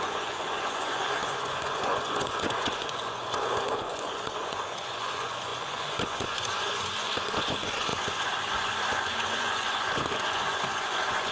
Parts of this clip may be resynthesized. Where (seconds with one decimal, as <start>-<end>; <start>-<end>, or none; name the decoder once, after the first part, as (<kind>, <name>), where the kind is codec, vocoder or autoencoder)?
0.0-11.3 (vocoder, Vocos)